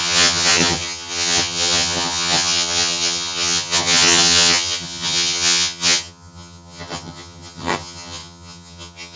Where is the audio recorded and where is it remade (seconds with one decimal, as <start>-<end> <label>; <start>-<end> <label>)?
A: 0.0-9.2 remade